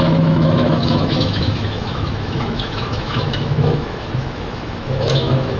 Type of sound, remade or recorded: remade